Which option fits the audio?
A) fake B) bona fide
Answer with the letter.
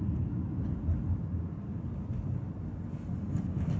B